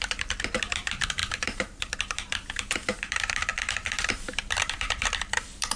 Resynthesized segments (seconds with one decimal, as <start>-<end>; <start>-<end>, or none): 0.0-5.8